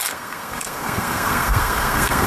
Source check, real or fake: fake